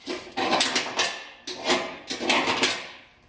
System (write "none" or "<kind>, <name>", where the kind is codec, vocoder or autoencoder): none